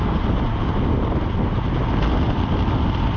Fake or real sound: real